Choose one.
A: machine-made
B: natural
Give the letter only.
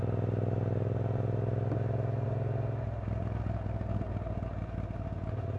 B